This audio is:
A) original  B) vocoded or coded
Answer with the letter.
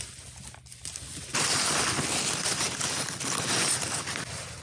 A